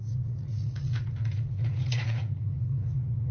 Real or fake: fake